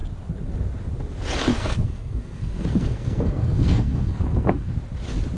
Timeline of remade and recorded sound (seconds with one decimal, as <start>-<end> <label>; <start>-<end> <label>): 0.0-1.5 recorded; 1.5-4.7 remade; 4.7-5.4 recorded